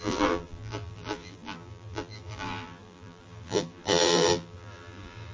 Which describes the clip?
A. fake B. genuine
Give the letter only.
A